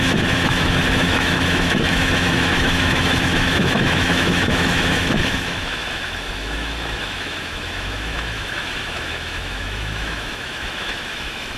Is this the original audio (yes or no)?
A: no